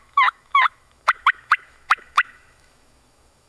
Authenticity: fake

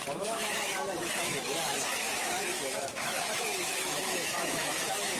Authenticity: fake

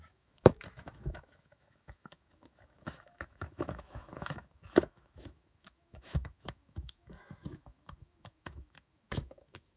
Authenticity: fake